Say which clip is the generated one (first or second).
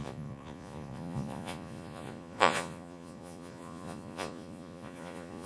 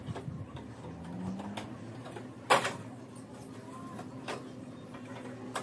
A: first